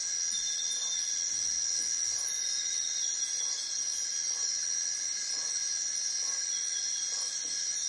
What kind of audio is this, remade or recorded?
recorded